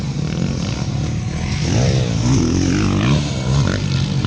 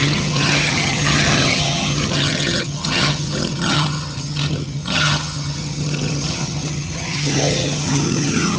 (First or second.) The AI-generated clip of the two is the second